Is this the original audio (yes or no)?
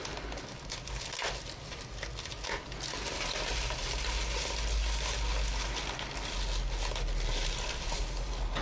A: yes